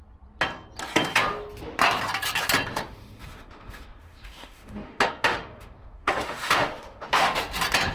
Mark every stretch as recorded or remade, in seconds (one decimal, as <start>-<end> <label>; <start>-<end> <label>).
0.0-2.7 recorded; 2.7-7.4 remade; 7.4-7.9 recorded